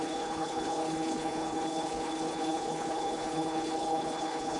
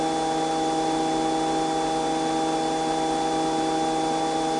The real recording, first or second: second